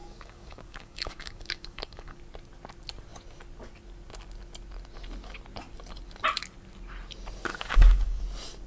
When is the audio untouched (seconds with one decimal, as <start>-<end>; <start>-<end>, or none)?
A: 2.2-7.5; 8.2-8.7

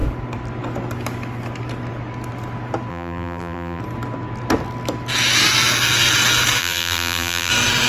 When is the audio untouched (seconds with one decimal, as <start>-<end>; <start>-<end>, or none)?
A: 0.0-2.9; 3.8-6.6; 7.5-7.9

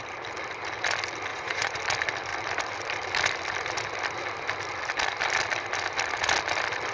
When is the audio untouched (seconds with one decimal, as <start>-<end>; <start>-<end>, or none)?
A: 0.0-1.3; 1.8-6.9

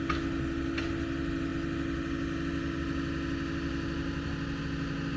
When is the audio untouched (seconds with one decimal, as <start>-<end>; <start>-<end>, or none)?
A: 0.0-5.2

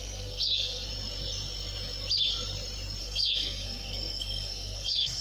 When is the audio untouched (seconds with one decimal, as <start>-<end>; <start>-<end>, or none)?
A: 0.9-3.0